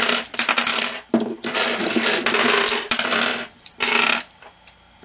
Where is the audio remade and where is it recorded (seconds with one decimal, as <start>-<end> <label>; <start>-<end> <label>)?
0.0-0.7 recorded; 0.7-3.7 remade; 3.7-5.0 recorded